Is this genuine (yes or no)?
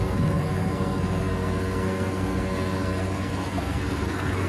no